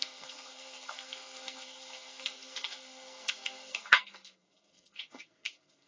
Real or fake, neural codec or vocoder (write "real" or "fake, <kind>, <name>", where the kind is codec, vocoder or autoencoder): fake, codec, SNAC